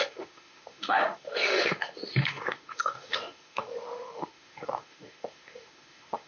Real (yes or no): no